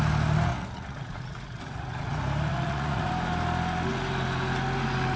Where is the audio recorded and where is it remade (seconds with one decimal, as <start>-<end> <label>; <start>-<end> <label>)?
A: 0.0-0.5 recorded; 0.5-2.1 remade; 2.1-2.5 recorded; 2.5-3.1 remade; 3.1-5.2 recorded